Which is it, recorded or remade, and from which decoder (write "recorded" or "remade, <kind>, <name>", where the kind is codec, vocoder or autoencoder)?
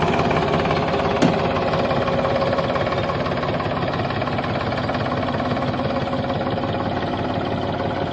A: recorded